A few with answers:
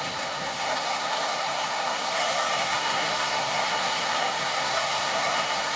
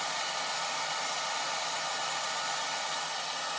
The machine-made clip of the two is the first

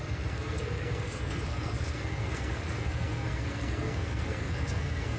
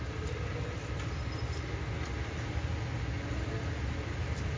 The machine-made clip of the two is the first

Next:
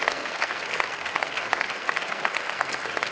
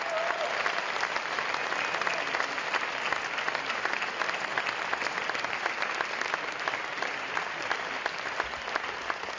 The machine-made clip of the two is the first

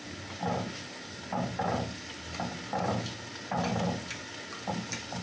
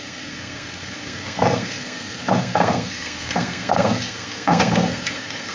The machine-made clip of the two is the second